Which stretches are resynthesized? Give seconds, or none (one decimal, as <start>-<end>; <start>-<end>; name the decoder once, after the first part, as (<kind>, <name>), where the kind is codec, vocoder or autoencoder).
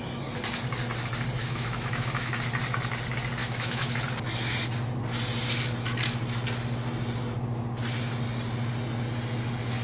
1.4-2.3 (autoencoder, DAC-VAE); 3.4-4.0